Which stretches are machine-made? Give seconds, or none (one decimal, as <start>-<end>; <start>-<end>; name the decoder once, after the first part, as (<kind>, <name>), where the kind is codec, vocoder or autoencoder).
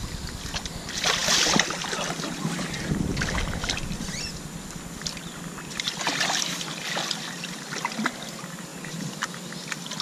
none